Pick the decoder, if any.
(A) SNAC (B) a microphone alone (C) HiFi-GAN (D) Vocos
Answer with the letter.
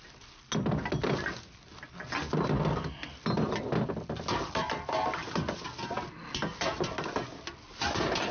B